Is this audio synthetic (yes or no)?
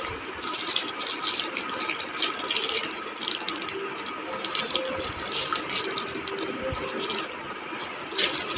no